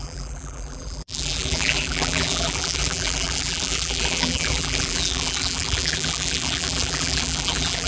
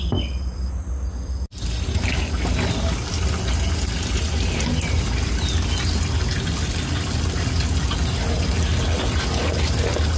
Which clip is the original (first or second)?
second